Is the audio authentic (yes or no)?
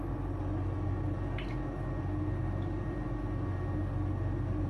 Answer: yes